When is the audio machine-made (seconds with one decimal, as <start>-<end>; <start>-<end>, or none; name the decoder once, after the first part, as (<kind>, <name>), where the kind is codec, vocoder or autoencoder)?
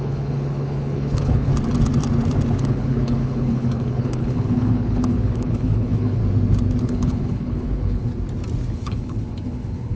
0.0-1.5 (codec, HILCodec); 2.6-6.2; 6.8-8.1; 8.7-10.0